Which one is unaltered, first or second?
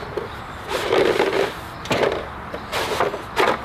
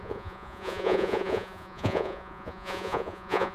first